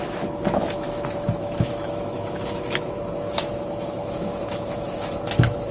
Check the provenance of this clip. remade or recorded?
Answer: remade